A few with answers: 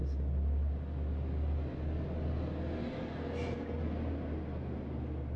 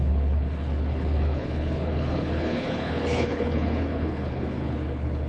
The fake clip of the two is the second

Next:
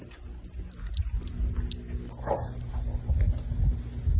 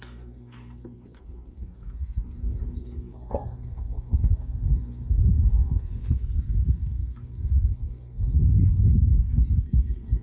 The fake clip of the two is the second